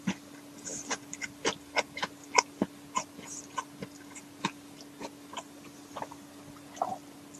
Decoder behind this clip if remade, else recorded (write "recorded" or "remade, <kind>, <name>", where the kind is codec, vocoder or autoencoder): recorded